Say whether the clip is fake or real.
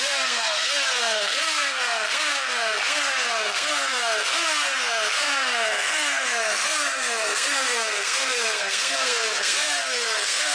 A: fake